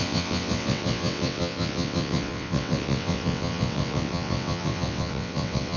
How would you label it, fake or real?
fake